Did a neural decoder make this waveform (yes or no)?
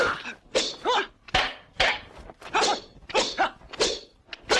no